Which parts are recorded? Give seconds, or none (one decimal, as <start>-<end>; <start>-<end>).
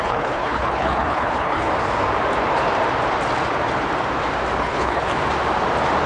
1.7-4.6; 5.1-6.1